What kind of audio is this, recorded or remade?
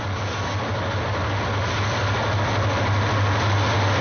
recorded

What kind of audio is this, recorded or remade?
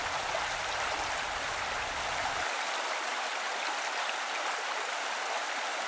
recorded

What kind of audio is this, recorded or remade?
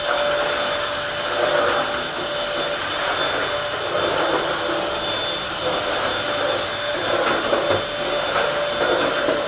recorded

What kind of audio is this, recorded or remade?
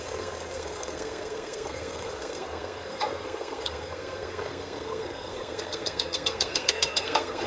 remade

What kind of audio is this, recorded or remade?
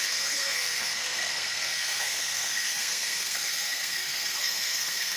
remade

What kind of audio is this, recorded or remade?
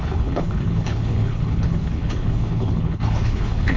remade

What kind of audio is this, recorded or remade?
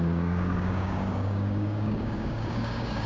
remade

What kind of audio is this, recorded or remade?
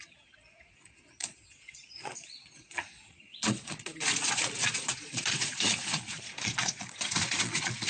remade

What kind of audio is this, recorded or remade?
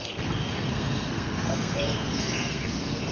remade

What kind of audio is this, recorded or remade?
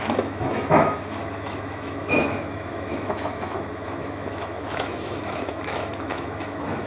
remade